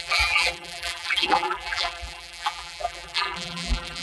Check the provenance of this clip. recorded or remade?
remade